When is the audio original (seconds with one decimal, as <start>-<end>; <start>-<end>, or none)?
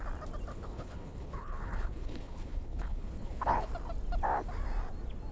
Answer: 0.0-0.5; 3.7-5.3